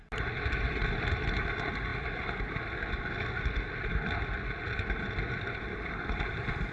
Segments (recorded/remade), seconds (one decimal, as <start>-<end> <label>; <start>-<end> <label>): 0.0-6.7 recorded